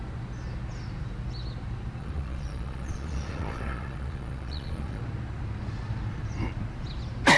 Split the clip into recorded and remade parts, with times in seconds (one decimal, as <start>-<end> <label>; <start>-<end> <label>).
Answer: 0.0-2.0 recorded; 2.0-5.0 remade; 5.0-7.4 recorded